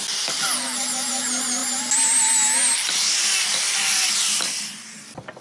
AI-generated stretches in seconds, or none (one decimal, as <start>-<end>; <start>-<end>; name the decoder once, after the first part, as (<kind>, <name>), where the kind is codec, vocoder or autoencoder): none